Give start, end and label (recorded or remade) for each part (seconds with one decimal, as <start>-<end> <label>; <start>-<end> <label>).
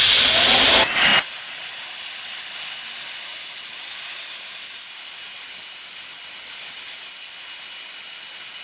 0.0-8.6 recorded